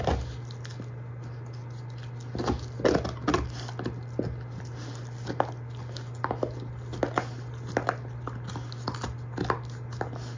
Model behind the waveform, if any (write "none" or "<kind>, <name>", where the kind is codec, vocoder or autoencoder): none